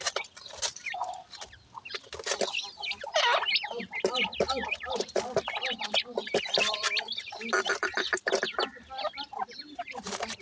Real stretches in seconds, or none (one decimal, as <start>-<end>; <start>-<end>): 0.0-10.4